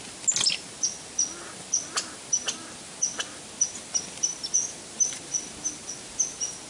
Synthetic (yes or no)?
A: no